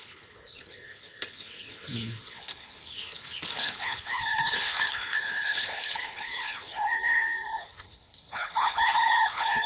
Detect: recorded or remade remade